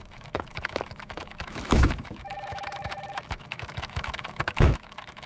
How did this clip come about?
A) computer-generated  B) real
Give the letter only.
A